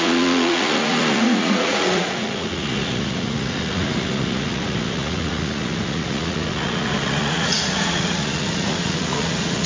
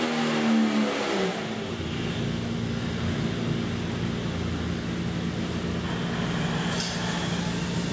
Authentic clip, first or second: second